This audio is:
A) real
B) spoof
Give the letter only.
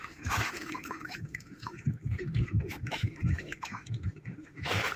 B